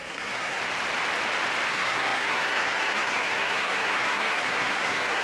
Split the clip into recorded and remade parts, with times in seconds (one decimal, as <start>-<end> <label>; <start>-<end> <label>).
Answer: 0.0-0.6 remade; 0.6-1.7 recorded; 1.7-5.2 remade